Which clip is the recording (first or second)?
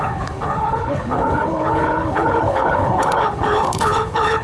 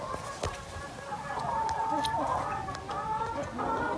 second